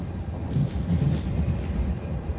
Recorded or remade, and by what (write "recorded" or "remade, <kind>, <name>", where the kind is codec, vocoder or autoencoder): remade, vocoder, BigVGAN v2